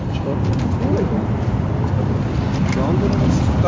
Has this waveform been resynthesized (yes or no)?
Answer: no